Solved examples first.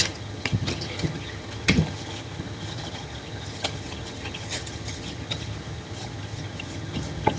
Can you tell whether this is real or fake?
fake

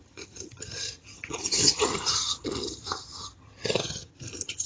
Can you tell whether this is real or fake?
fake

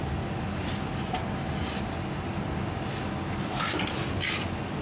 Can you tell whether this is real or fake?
real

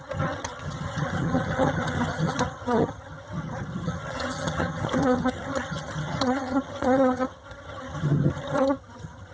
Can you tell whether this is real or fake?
fake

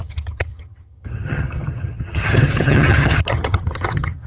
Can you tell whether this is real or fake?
fake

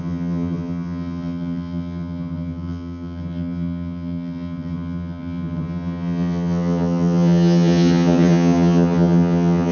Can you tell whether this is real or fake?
fake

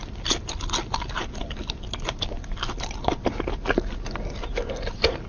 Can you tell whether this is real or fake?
real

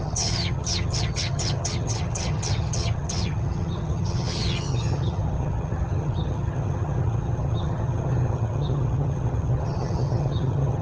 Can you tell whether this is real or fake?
fake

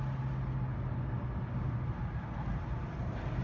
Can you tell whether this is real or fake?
real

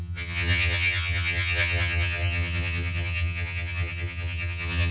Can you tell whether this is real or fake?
fake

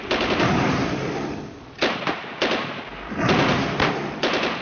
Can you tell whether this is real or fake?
real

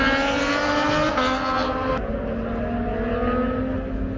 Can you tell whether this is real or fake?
real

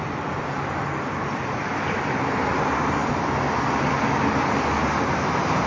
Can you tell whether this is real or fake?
real